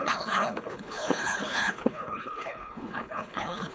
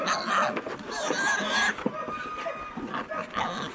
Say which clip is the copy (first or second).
first